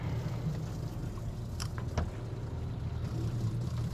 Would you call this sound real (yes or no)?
yes